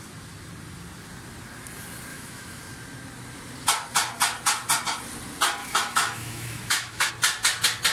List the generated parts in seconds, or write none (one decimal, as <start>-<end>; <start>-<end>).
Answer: 2.1-2.6; 5.6-7.1